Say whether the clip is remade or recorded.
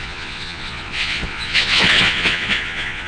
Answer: remade